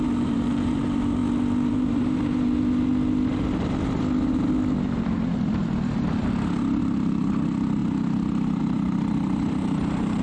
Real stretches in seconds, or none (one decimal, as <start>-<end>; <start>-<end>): 1.2-1.7; 2.9-6.8